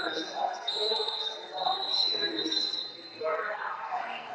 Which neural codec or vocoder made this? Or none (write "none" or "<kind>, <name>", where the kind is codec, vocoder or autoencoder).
codec, SNAC